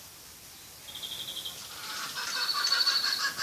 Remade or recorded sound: recorded